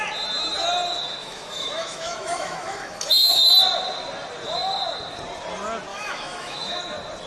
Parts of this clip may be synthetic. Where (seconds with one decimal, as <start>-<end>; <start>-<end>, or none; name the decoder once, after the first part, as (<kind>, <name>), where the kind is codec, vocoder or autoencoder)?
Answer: 1.2-3.5 (autoencoder, DAC-VAE); 5.9-6.8